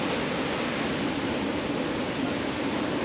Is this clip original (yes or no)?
yes